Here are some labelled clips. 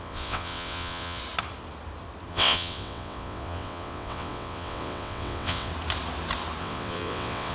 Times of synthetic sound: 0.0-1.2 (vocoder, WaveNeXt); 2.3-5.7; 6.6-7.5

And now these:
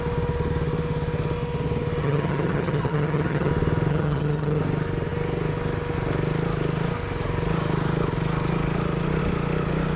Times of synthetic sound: 2.0-3.5 (vocoder, HiFi-GAN); 3.9-4.6

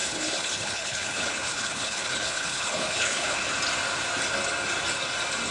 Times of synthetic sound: 0.0-3.4 (codec, HILCodec)

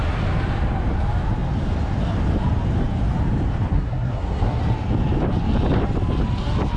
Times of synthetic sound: 3.7-4.6 (codec, SNAC)